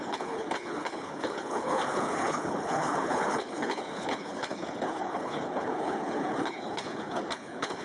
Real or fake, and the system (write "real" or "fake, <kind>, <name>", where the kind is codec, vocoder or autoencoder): fake, codec, HILCodec